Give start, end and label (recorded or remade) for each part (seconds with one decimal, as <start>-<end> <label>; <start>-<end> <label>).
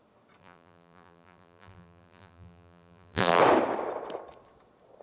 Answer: 0.0-0.4 recorded; 0.4-3.4 remade; 3.4-5.0 recorded